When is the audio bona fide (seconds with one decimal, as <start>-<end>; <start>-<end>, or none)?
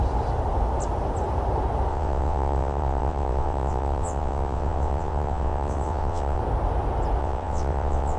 0.0-1.9; 6.4-7.2